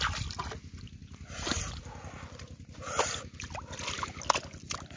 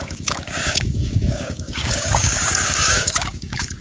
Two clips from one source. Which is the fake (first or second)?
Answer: second